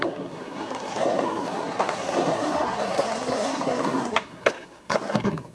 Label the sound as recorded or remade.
remade